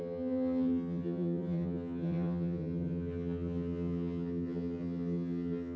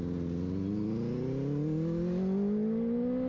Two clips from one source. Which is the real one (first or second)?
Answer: second